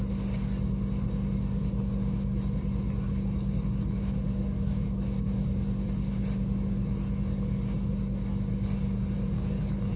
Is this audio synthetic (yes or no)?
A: no